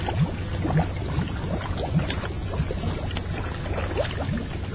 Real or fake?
real